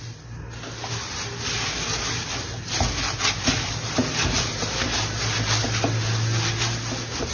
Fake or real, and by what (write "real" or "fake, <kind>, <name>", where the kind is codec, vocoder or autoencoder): real